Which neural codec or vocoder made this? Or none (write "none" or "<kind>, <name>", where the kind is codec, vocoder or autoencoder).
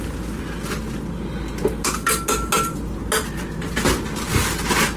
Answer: none